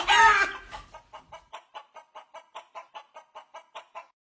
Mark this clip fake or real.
real